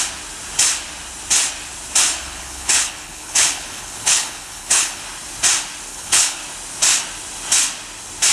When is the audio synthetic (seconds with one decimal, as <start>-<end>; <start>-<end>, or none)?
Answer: 2.2-5.0; 5.9-6.4